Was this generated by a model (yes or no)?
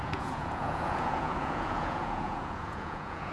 yes